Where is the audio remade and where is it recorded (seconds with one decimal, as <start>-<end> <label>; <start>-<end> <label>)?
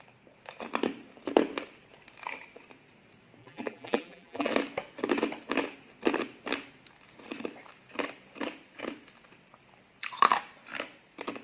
0.0-3.4 recorded; 3.4-4.5 remade; 4.5-11.4 recorded